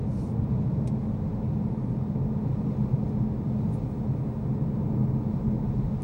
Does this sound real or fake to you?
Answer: real